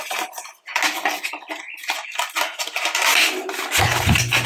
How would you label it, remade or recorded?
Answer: recorded